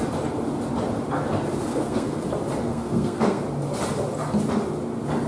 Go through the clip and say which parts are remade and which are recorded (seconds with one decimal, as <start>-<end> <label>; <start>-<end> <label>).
0.0-1.7 recorded; 1.7-2.2 remade; 2.2-2.7 recorded; 2.7-3.4 remade; 3.4-5.3 recorded